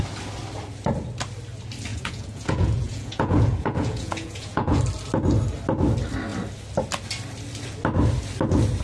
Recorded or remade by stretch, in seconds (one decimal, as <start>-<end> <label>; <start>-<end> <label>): 0.0-1.9 recorded; 1.9-4.8 remade; 4.8-8.8 recorded